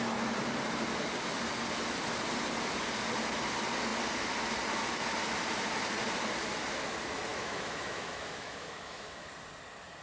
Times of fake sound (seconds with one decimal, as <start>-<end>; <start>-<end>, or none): 7.3-9.3